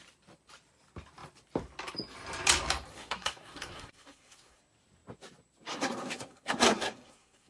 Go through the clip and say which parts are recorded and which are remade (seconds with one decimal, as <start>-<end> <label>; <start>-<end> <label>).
0.0-2.9 recorded; 2.9-4.6 remade; 4.6-5.7 recorded; 5.7-7.5 remade